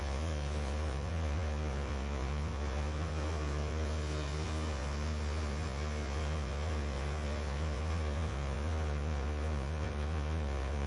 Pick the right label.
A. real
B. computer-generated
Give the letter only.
B